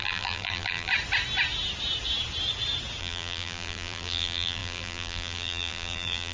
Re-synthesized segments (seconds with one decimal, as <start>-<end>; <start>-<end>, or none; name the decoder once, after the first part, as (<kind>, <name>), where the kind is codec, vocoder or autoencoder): 0.0-0.9 (vocoder, BigVGAN v2); 3.0-6.3